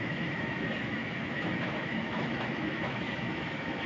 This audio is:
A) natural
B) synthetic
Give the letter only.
B